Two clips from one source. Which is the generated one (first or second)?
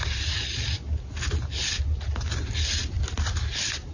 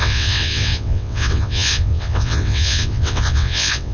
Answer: second